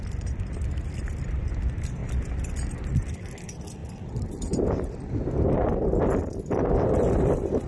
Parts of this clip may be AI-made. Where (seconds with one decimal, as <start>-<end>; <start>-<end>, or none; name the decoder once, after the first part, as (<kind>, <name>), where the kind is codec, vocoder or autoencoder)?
0.0-2.0 (vocoder, BigVGAN v2); 3.4-7.7